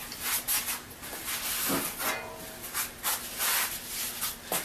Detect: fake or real real